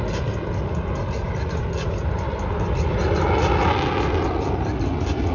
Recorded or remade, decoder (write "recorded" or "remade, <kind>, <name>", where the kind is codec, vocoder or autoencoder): recorded